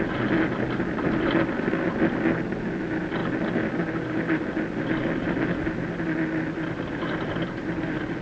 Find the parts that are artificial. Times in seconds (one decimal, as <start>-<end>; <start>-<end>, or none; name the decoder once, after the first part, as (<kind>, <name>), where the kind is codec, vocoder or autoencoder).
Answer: none